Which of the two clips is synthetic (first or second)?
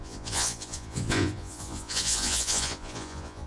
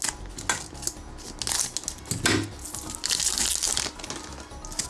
first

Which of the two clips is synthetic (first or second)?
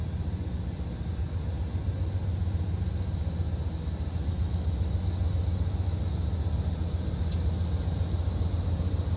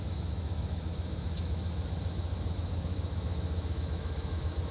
second